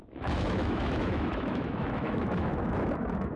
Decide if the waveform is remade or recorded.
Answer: remade